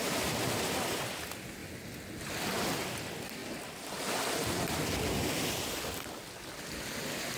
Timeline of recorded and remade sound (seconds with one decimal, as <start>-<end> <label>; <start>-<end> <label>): 0.0-7.4 recorded